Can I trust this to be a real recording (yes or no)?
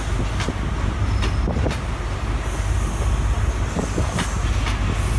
yes